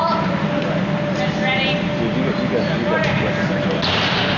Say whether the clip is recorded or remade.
recorded